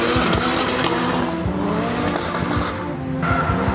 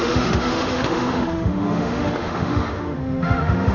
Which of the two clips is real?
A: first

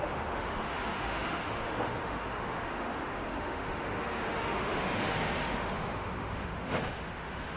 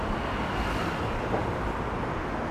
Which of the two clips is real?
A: second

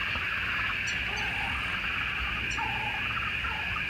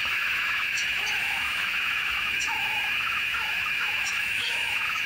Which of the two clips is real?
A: first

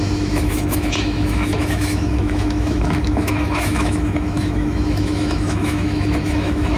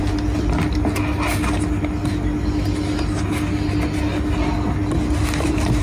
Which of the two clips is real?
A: second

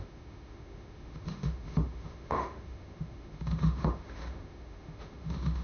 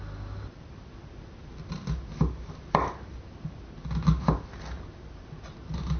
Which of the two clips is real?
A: second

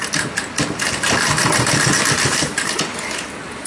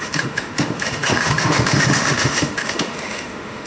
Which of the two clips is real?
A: first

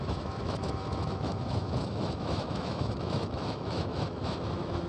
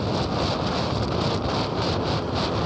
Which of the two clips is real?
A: second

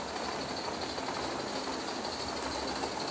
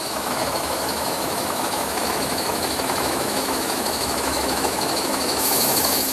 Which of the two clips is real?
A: first